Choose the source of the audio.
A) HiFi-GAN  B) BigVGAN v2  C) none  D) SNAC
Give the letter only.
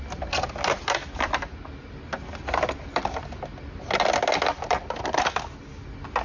C